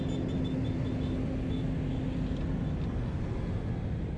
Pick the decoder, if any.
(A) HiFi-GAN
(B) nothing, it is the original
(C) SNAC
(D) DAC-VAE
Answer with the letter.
B